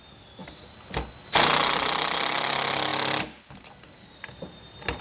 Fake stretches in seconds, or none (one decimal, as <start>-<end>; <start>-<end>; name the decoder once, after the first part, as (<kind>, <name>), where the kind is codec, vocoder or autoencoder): none